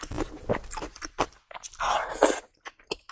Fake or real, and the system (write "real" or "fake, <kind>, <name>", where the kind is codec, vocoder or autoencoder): real